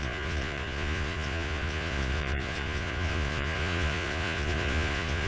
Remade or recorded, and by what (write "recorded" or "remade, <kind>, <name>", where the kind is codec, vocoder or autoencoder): remade, vocoder, Vocos